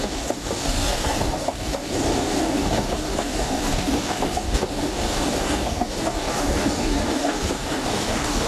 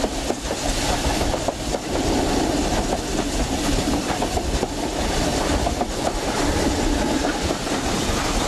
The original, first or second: second